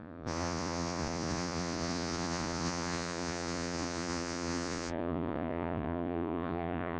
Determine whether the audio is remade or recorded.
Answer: remade